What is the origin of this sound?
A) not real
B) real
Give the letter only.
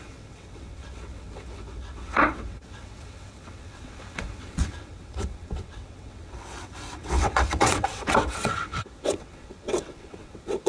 A